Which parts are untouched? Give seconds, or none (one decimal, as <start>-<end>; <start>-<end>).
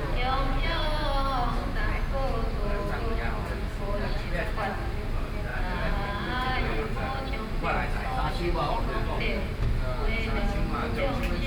0.0-5.5; 6.6-11.5